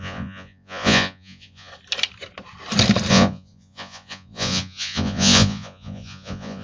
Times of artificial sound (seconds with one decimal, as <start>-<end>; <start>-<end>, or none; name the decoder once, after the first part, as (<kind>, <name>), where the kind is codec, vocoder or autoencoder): 0.0-1.7 (vocoder, Vocos); 3.1-6.6